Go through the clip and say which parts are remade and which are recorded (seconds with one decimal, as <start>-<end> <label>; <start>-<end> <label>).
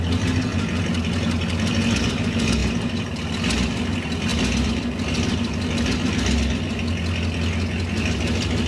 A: 0.0-0.5 recorded; 0.5-1.7 remade; 1.7-2.6 recorded; 2.6-3.3 remade; 3.3-4.3 recorded; 4.3-6.1 remade; 6.1-8.7 recorded